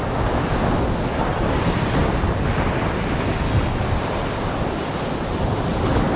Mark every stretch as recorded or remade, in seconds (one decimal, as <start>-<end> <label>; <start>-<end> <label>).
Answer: 0.0-6.2 recorded